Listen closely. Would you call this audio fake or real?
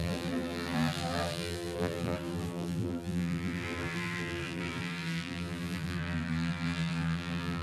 fake